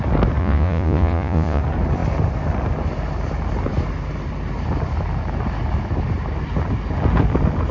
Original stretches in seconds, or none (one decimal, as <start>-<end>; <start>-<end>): 0.0-0.4; 1.6-7.7